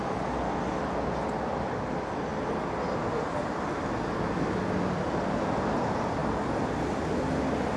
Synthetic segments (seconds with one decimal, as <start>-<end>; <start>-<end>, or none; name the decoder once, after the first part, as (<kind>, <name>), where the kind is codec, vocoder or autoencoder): none